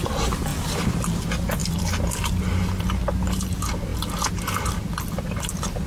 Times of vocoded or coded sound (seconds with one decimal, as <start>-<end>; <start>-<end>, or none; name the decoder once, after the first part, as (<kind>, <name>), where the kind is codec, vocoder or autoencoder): 1.6-2.4 (vocoder, BigVGAN v2)